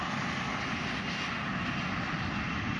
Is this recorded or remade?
recorded